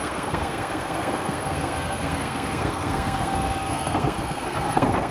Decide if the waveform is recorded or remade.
remade